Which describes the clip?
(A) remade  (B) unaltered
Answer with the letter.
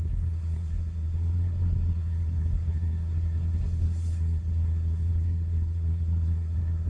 A